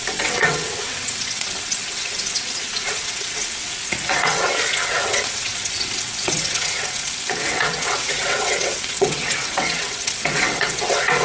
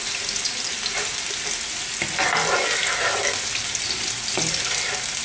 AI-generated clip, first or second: first